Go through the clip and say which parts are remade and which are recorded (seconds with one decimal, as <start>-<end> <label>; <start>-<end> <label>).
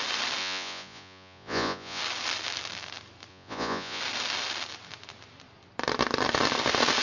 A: 0.0-0.4 recorded; 0.4-2.0 remade; 2.0-3.3 recorded; 3.3-4.0 remade; 4.0-7.0 recorded